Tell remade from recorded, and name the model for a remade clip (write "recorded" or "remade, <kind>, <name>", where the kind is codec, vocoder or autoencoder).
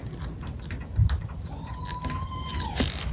recorded